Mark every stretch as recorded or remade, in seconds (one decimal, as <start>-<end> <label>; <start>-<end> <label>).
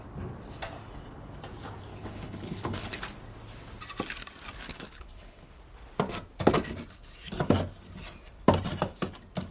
0.0-1.9 recorded; 1.9-3.0 remade; 3.0-4.7 recorded; 4.7-5.5 remade; 5.5-9.5 recorded